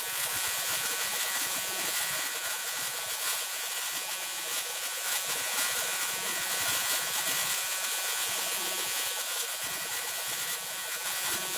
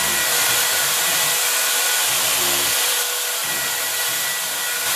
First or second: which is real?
second